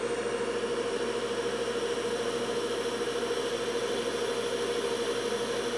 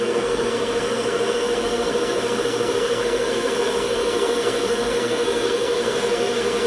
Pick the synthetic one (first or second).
second